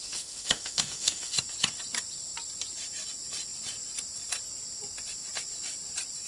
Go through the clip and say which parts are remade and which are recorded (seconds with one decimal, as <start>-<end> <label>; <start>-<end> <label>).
0.0-1.4 remade; 1.4-6.3 recorded